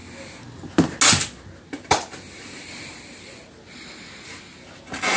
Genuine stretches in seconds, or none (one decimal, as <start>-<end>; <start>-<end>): 0.0-5.2